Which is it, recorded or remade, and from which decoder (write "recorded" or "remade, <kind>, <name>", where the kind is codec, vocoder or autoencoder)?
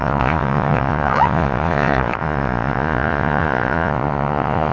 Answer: remade, vocoder, Vocos